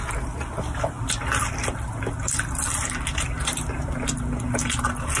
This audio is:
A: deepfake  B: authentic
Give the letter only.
B